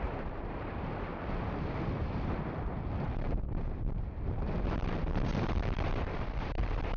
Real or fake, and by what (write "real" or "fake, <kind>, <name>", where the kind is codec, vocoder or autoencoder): fake, vocoder, BigVGAN v2